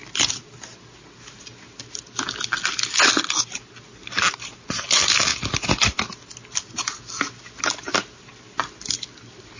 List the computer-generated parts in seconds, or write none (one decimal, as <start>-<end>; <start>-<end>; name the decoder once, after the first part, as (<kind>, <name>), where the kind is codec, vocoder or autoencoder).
none